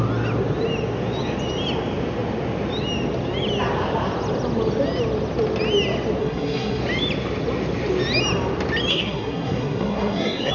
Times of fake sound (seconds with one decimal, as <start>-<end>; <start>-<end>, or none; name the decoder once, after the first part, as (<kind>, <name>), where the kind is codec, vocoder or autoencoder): 6.2-6.8 (codec, SNAC); 8.9-10.5